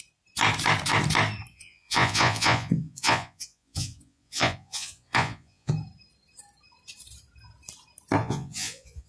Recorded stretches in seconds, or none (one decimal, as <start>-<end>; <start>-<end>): 0.0-1.5; 5.7-8.2